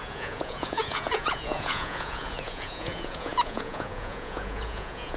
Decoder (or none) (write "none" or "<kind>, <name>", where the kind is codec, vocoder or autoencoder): vocoder, Vocos